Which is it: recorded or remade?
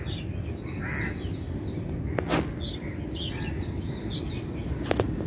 recorded